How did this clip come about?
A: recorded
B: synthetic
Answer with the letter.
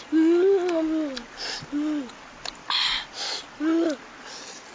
A